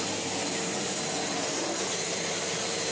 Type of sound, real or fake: real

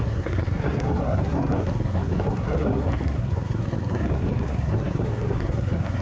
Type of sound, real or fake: fake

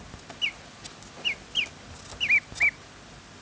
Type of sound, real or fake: real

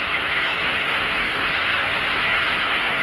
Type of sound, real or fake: fake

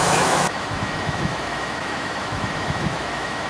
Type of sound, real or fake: fake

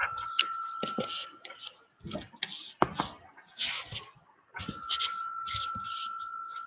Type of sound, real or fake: real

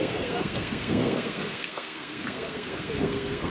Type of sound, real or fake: fake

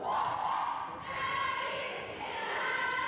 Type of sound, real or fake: real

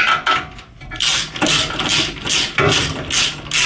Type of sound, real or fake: real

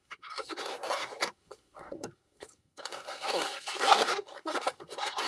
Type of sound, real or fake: fake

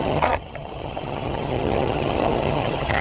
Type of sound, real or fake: fake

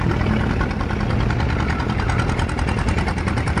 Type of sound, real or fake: real